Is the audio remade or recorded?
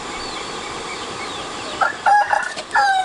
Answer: remade